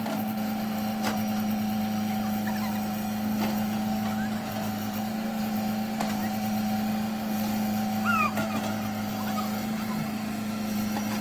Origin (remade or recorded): recorded